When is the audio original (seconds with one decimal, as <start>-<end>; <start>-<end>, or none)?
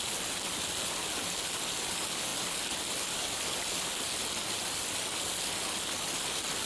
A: 0.0-6.7